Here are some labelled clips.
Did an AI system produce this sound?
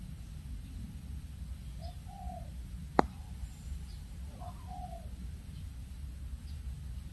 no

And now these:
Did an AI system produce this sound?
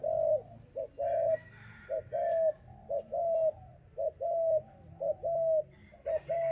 no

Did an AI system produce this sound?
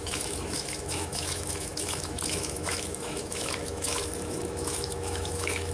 yes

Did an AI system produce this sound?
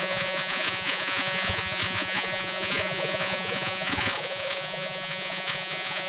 yes